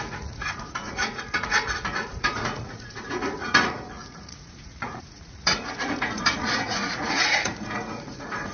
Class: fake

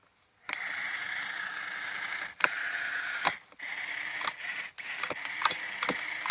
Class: real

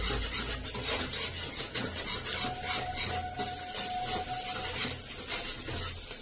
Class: real